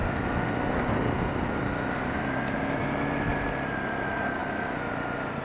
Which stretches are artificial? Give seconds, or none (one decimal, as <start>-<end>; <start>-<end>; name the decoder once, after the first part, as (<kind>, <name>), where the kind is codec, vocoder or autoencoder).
none